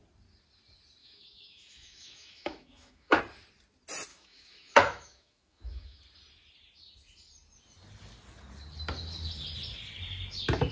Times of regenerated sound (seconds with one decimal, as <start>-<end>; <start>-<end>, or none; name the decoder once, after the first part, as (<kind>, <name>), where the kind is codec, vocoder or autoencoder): 1.0-3.2 (autoencoder, DAC-VAE); 4.1-6.0